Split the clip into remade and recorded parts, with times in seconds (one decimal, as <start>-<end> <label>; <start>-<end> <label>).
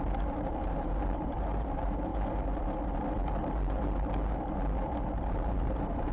0.0-2.1 remade; 2.1-5.3 recorded; 5.3-6.1 remade